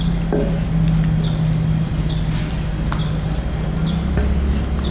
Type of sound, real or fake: real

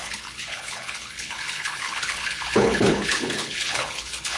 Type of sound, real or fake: fake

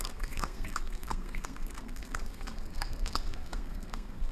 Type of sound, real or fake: fake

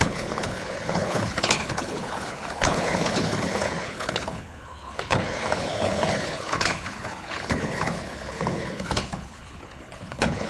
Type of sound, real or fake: fake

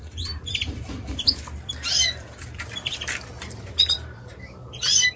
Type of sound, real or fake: fake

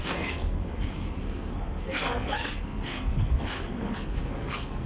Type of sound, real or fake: fake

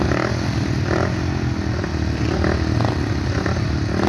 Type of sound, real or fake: real